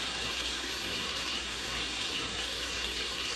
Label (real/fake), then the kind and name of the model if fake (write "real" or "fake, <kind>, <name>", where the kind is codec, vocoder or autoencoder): fake, codec, SNAC